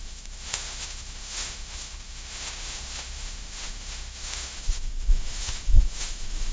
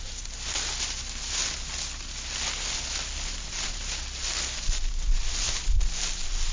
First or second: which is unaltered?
second